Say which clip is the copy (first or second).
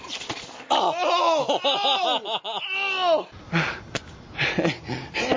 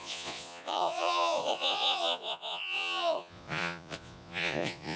second